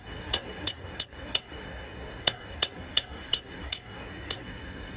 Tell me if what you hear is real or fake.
fake